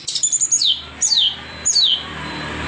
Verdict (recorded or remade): remade